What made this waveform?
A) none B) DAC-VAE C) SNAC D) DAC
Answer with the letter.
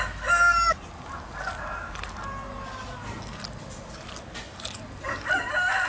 A